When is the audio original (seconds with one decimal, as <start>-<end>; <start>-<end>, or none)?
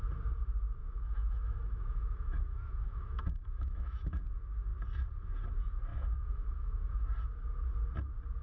0.0-0.8; 4.2-5.9; 6.9-8.4